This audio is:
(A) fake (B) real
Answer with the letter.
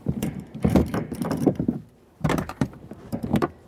A